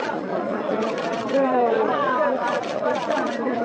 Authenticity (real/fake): fake